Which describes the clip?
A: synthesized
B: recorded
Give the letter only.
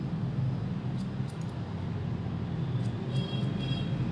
B